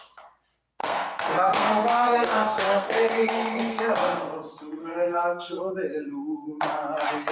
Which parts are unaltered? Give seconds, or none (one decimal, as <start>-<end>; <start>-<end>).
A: 0.0-0.8; 4.2-4.8; 5.7-7.3